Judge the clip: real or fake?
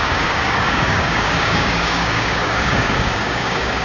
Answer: fake